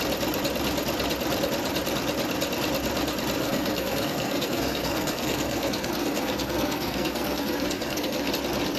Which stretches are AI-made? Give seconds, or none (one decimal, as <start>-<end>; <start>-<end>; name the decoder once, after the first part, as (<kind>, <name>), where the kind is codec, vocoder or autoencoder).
3.4-8.3 (codec, SNAC)